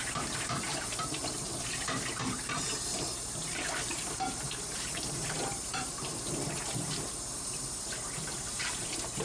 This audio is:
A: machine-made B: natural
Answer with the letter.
A